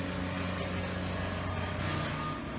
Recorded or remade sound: recorded